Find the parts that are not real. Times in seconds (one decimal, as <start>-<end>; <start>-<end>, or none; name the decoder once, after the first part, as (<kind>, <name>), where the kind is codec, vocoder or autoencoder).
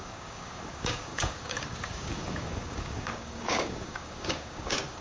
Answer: 0.0-5.0 (codec, DAC)